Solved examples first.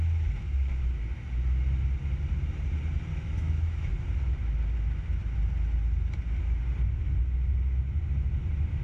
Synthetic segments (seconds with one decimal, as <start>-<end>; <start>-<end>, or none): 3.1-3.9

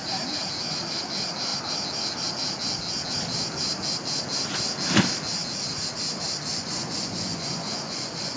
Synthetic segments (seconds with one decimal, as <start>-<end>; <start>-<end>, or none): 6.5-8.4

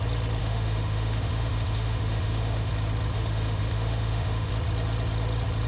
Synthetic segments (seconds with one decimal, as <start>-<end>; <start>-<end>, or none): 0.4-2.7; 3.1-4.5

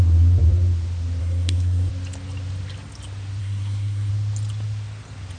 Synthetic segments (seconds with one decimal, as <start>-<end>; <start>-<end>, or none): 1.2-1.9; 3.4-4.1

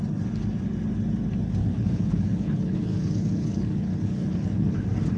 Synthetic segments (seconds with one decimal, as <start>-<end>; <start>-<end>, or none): 1.6-4.7

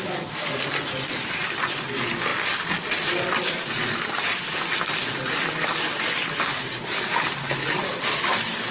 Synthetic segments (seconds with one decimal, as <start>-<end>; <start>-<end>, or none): none

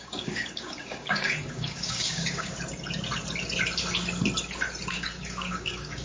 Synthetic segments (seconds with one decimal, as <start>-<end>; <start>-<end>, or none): 0.0-2.5; 4.9-6.0

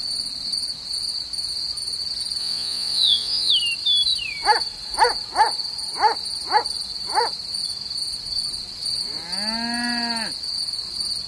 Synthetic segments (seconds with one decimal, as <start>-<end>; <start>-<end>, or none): 2.4-3.5